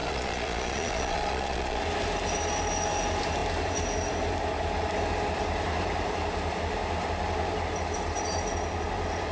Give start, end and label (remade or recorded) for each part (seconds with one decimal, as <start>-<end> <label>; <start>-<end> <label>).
0.0-1.8 remade; 1.8-9.3 recorded